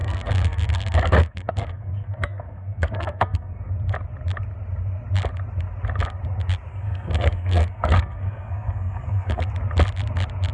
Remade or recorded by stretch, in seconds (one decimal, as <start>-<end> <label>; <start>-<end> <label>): 0.0-3.7 remade; 3.7-6.7 recorded; 6.7-9.5 remade; 9.5-10.5 recorded